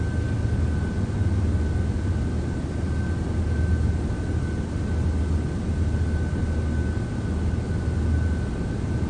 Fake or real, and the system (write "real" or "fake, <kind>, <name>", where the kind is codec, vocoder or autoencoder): real